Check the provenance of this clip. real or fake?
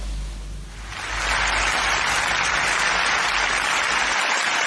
real